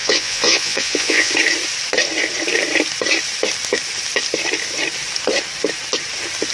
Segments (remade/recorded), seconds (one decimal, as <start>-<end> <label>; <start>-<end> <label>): 0.0-1.3 remade; 1.3-6.5 recorded